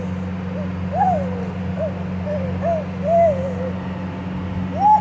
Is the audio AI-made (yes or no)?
no